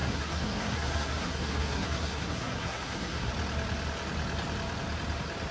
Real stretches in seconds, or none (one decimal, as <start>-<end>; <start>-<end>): 3.3-5.5